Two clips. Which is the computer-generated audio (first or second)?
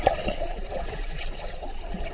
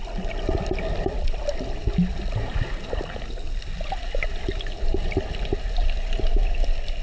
first